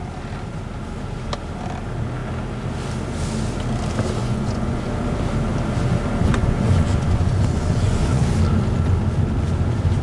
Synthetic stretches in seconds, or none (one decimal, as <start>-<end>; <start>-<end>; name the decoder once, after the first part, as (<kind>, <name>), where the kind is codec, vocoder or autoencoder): 4.2-4.9 (vocoder, Vocos); 6.2-8.3